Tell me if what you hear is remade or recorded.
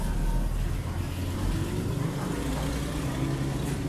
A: recorded